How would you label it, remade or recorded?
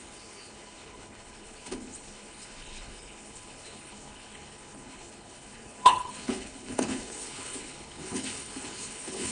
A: remade